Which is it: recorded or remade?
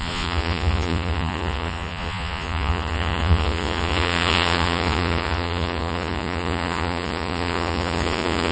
remade